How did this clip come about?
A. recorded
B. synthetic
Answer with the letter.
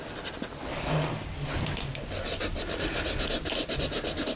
A